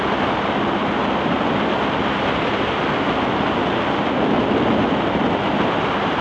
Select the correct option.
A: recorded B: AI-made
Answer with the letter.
A